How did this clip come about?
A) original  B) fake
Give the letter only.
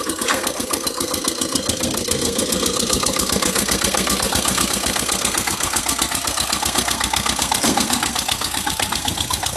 B